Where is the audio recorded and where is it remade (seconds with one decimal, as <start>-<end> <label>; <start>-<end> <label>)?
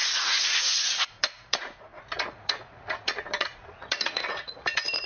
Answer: 0.0-5.1 remade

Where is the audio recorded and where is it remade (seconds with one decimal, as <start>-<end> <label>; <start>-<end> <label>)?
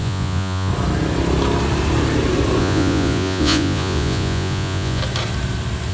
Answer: 0.0-0.7 remade; 0.7-2.6 recorded; 2.6-5.0 remade; 5.0-5.9 recorded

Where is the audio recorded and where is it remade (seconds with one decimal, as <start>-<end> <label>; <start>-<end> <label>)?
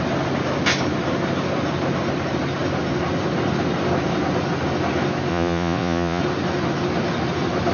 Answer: 0.0-5.3 recorded; 5.3-6.2 remade; 6.2-7.7 recorded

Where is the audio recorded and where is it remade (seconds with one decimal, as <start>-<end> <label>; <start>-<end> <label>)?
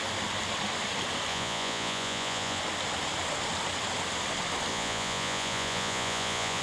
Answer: 0.0-1.3 recorded; 1.3-2.6 remade; 2.6-4.7 recorded; 4.7-6.6 remade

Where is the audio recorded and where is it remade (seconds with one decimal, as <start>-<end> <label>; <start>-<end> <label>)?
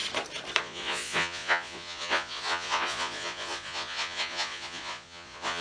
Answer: 0.0-0.6 recorded; 0.6-5.6 remade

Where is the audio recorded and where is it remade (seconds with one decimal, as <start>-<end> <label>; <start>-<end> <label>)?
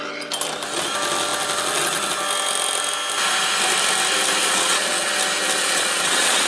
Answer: 0.0-4.4 recorded; 4.4-5.1 remade; 5.1-5.6 recorded; 5.6-6.5 remade